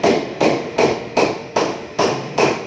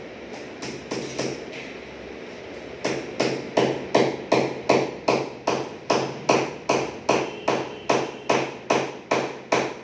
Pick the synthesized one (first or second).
first